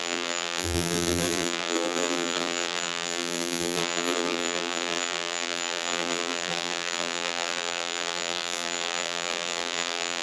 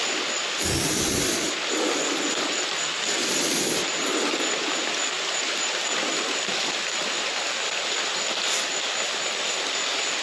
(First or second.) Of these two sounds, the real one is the second